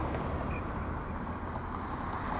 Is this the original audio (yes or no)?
yes